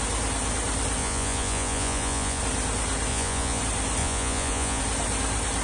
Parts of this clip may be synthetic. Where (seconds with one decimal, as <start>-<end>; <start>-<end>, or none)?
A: 1.0-2.4; 3.1-3.6; 4.0-4.8